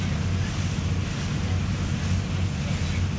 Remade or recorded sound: recorded